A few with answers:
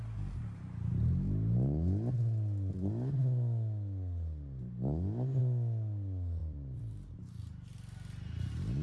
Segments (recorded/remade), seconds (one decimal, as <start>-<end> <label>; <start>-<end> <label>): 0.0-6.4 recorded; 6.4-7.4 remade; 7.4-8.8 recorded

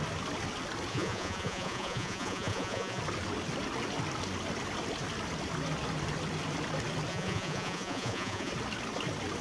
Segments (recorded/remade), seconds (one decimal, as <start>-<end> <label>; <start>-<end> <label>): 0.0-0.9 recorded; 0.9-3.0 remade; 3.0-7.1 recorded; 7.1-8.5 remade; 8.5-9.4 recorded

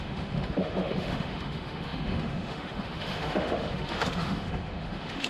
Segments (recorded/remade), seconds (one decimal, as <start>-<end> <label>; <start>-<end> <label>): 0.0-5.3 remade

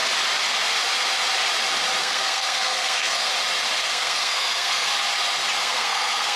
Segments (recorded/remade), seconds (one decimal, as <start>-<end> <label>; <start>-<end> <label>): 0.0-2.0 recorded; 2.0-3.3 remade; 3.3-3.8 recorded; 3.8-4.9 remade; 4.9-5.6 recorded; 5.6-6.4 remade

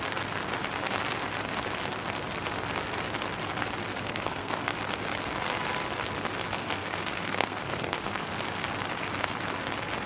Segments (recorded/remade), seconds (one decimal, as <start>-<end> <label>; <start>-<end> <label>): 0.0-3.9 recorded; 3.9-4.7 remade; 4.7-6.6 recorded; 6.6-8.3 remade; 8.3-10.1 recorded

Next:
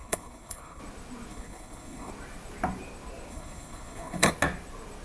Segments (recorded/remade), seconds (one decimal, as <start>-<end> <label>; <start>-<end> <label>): 0.0-0.8 remade; 0.8-1.3 recorded; 1.3-2.1 remade; 2.1-3.3 recorded; 3.3-4.3 remade; 4.3-5.0 recorded

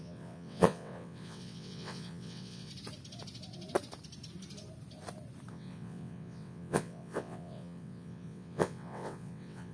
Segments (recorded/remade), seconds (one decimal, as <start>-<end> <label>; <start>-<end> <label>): 0.0-2.7 remade; 2.7-5.5 recorded; 5.5-9.7 remade